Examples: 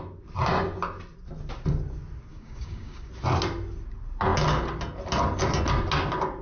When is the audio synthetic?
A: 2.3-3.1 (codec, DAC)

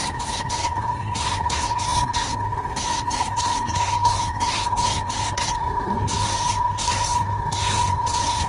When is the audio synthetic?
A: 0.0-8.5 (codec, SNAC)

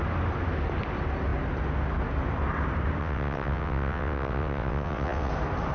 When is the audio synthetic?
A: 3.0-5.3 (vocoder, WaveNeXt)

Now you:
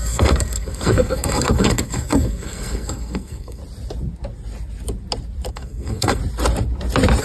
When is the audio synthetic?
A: 0.0-3.6 (codec, SNAC); 5.5-6.2

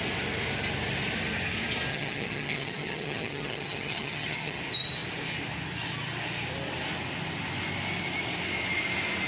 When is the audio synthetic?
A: 1.9-4.6 (vocoder, HiFi-GAN)

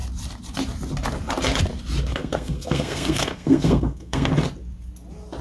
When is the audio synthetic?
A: 2.1-4.3 (codec, SNAC)